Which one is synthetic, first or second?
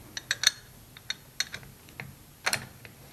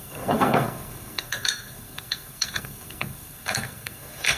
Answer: second